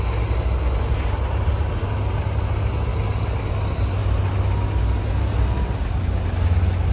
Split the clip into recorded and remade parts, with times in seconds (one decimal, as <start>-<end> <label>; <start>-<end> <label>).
0.0-6.9 recorded

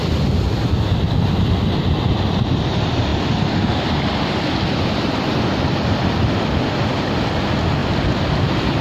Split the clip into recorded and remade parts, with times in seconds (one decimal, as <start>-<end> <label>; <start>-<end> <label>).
0.0-8.8 recorded